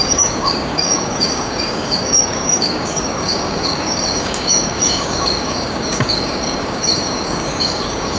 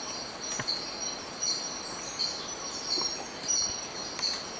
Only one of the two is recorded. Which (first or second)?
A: second